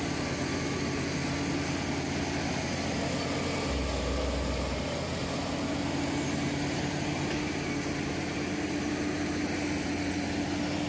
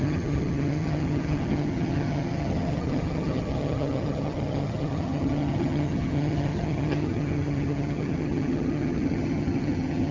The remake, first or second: second